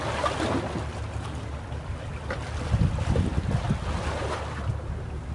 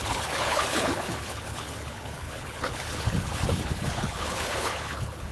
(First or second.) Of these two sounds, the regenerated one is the second